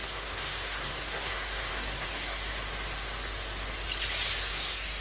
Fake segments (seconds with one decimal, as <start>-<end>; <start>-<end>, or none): 0.0-2.5; 4.4-5.0